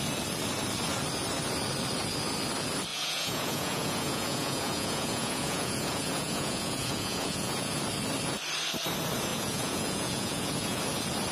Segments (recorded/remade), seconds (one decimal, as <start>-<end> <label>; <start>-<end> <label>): 0.0-2.9 recorded; 2.9-7.8 remade; 7.8-9.3 recorded; 9.3-10.8 remade; 10.8-11.3 recorded